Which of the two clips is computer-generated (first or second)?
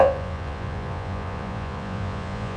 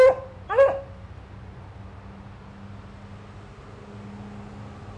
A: first